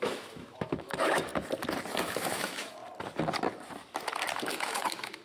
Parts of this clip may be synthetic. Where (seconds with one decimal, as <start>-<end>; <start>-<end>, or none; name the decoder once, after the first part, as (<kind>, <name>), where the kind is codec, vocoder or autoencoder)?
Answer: 0.0-1.3 (autoencoder, DAC-VAE); 2.0-2.8; 4.4-5.2